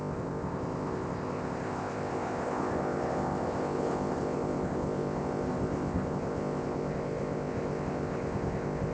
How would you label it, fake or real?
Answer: fake